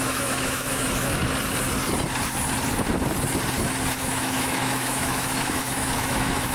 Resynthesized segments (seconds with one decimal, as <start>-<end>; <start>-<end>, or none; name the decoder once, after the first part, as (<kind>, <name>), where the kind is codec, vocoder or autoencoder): 0.0-1.2 (autoencoder, DAC-VAE); 4.0-6.5